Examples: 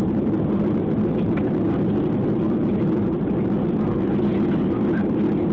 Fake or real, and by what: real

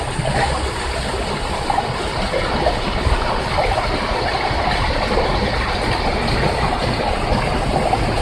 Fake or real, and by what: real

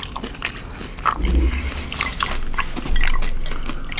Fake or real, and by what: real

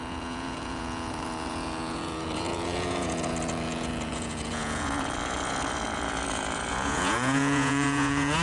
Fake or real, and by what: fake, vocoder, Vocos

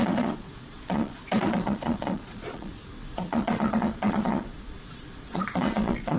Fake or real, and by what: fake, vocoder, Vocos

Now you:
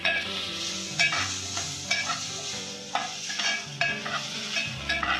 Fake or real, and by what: fake, vocoder, Vocos